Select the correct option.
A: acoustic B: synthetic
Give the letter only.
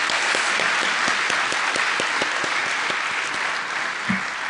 A